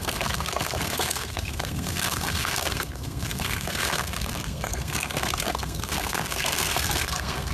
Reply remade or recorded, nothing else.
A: remade